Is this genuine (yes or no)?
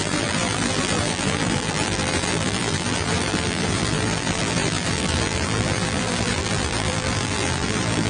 no